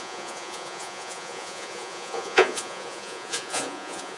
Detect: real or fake fake